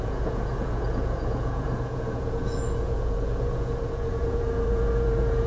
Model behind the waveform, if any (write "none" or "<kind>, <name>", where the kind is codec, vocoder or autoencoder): vocoder, Vocos